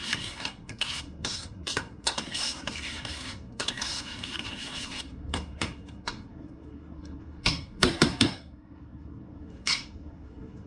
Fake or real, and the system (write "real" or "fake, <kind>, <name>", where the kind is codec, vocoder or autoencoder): fake, codec, SNAC